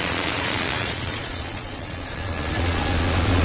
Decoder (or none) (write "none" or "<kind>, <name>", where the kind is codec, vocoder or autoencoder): vocoder, Vocos